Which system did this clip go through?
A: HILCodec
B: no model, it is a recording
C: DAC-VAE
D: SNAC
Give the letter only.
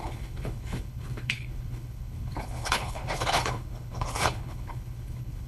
A